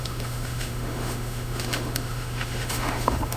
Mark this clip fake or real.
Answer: fake